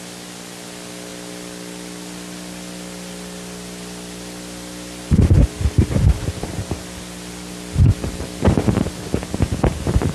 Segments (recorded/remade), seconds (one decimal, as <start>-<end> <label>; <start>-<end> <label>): 0.0-10.1 recorded